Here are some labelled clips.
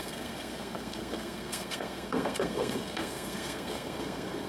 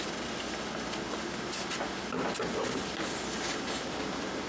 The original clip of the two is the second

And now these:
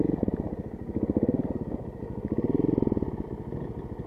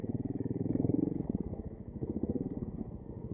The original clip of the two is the first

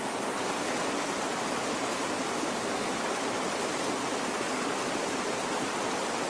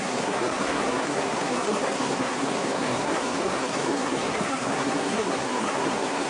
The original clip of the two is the first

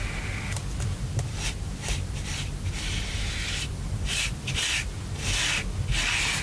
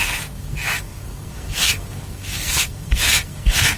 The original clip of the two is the first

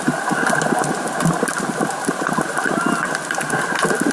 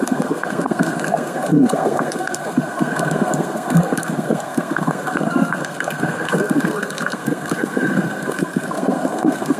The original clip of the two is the first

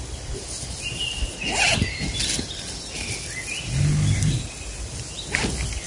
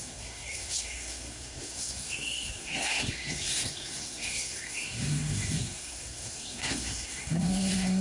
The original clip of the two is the first